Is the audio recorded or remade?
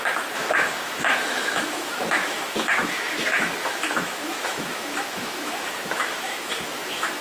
remade